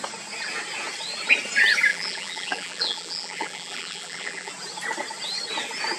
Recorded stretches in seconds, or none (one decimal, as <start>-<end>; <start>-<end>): 0.0-1.9; 4.5-6.0